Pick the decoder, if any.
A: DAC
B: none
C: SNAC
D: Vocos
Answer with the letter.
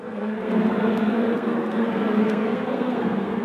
C